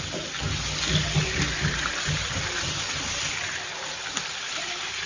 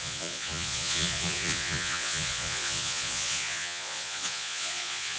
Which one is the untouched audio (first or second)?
first